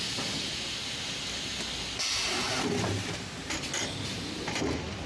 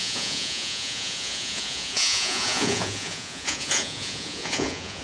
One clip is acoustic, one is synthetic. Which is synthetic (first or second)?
second